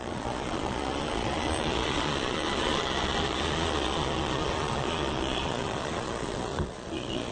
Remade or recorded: remade